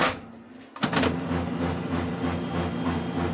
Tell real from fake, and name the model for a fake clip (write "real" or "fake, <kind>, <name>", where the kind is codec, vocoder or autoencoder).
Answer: real